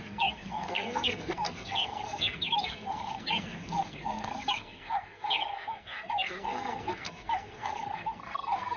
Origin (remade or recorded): remade